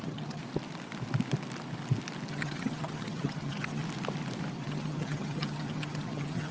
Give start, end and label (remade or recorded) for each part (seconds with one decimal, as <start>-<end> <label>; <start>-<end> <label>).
0.0-0.4 remade; 0.4-2.3 recorded; 2.3-3.8 remade; 3.8-4.5 recorded; 4.5-6.5 remade

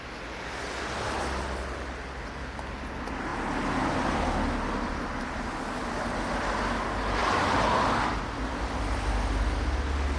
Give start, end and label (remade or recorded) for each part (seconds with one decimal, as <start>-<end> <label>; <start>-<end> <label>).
0.0-10.2 recorded

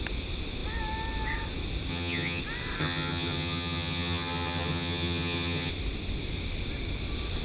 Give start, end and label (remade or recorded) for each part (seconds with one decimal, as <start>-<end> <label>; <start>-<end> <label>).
0.0-1.9 recorded; 1.9-2.4 remade; 2.4-2.8 recorded; 2.8-5.7 remade; 5.7-7.4 recorded

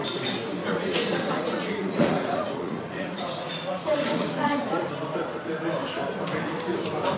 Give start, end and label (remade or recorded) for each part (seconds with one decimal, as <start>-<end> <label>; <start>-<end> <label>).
0.0-0.6 recorded; 0.6-4.9 remade; 4.9-7.2 recorded

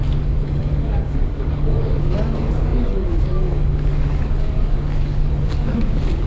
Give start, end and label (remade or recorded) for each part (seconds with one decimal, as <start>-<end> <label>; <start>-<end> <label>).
0.0-6.3 remade

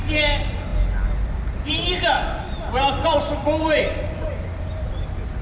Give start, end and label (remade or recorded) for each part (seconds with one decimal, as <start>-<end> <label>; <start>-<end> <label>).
0.0-0.7 remade; 0.7-1.3 recorded; 1.3-5.4 remade

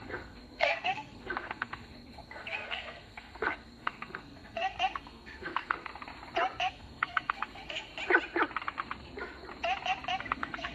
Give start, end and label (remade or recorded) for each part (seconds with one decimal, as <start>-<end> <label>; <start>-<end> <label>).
0.0-5.9 remade; 5.9-6.7 recorded; 6.7-7.9 remade; 7.9-10.2 recorded; 10.2-10.7 remade

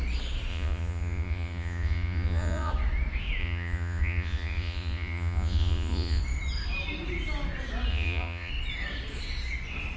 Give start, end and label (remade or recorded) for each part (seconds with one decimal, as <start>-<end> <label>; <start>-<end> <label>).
0.0-0.5 recorded; 0.5-2.7 remade; 2.7-3.4 recorded; 3.4-6.2 remade; 6.2-7.9 recorded; 7.9-8.5 remade; 8.5-10.0 recorded